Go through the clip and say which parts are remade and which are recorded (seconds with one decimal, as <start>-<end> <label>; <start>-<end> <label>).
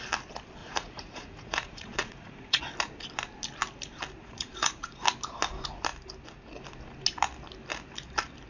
0.0-0.6 recorded; 0.6-2.6 remade; 2.6-4.2 recorded; 4.2-5.0 remade; 5.0-8.5 recorded